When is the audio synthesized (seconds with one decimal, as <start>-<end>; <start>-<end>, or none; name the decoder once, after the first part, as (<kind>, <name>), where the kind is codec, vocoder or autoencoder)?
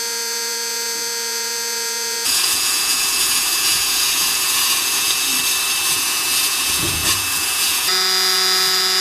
0.0-5.3 (vocoder, Vocos); 5.9-9.0